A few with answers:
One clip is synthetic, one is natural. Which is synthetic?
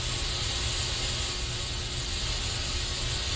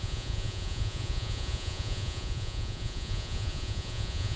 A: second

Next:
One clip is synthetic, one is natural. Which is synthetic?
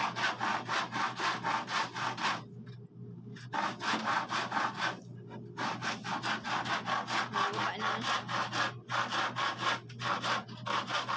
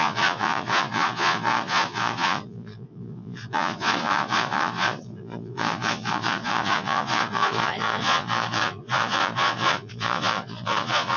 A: second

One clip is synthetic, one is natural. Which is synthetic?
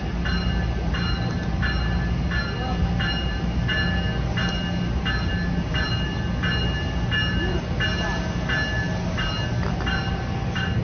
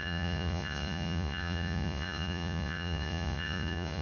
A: second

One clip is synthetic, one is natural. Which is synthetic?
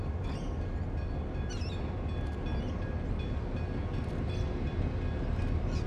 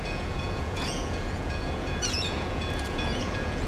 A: second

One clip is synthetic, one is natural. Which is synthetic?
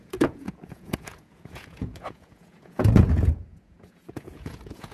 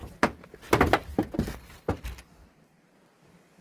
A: first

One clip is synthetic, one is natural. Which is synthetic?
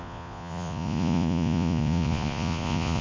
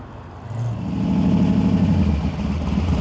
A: first